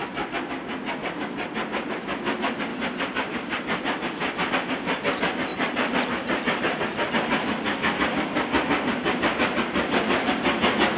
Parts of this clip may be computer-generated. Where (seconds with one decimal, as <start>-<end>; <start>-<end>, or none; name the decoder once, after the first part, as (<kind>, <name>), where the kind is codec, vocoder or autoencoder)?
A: 2.7-4.5 (vocoder, BigVGAN v2); 5.5-7.1